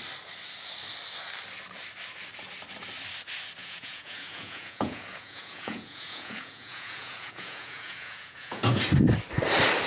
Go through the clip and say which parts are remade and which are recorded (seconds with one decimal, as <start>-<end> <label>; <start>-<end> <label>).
0.0-3.6 recorded; 3.6-8.8 remade; 8.8-9.9 recorded